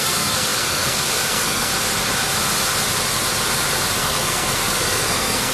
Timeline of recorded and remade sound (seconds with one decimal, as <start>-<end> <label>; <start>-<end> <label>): 0.0-1.7 remade; 1.7-4.0 recorded; 4.0-5.5 remade